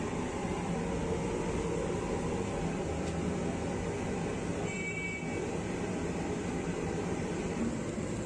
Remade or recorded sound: recorded